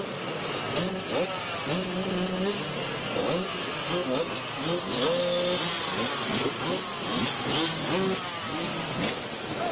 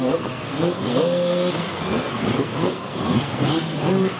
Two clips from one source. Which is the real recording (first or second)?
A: first